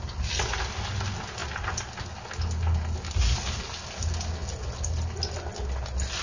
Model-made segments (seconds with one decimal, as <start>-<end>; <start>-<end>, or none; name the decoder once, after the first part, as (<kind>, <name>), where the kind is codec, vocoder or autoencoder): none